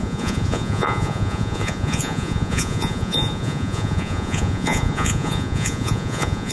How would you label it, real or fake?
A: fake